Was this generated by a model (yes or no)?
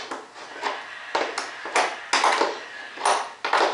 no